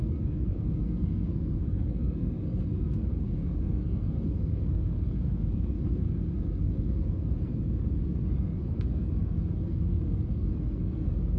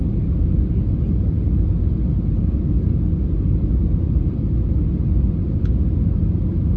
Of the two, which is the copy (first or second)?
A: first